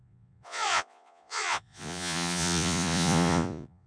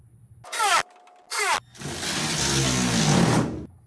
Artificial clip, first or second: first